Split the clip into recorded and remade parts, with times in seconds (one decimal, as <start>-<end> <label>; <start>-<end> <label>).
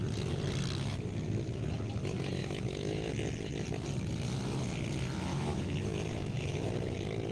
0.0-2.4 recorded; 2.4-3.1 remade; 3.1-5.3 recorded; 5.3-6.6 remade; 6.6-7.3 recorded